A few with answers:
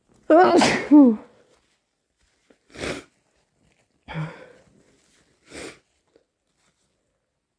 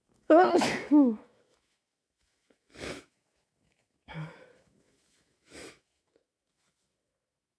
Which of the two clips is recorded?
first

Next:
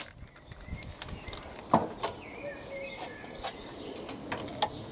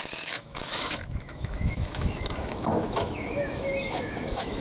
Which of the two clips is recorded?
first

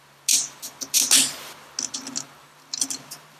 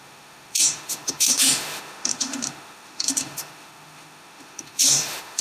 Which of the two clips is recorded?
first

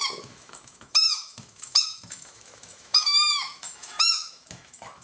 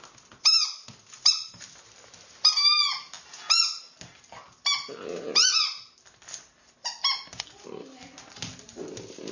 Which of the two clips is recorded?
second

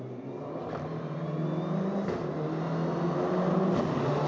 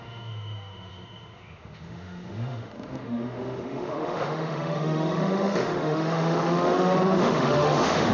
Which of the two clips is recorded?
first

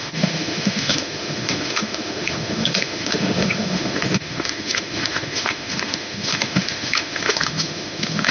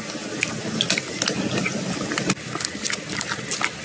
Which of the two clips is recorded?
second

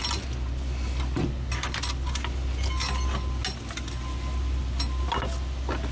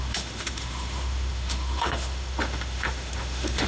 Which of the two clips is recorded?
first